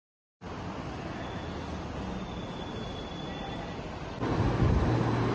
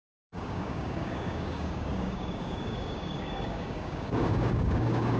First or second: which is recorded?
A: first